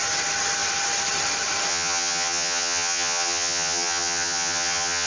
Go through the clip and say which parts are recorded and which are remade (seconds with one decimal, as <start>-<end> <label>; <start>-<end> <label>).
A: 0.0-1.7 recorded; 1.7-5.1 remade